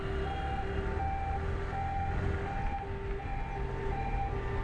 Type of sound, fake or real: real